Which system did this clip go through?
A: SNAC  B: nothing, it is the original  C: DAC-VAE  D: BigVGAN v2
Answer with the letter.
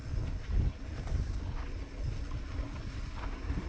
B